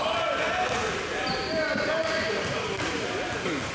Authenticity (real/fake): real